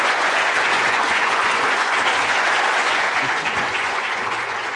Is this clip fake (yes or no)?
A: yes